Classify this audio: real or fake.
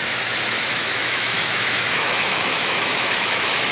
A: fake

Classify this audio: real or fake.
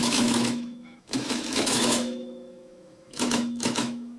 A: fake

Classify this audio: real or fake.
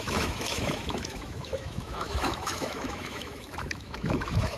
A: fake